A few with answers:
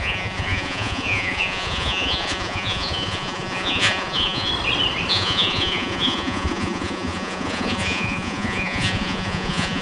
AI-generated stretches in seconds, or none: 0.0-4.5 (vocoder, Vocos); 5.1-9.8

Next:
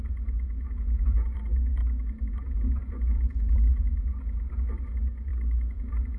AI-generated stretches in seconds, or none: 0.0-1.8 (vocoder, Vocos); 2.3-5.3